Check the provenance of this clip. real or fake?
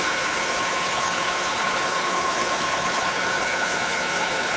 fake